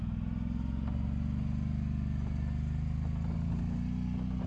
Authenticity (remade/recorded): recorded